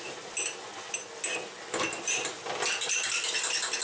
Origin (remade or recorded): recorded